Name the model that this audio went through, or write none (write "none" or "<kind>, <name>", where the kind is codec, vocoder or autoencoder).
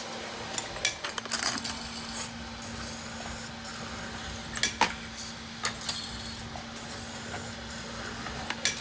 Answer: none